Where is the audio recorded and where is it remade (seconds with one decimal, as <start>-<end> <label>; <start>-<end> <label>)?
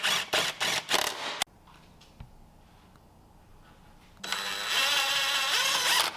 0.0-6.2 recorded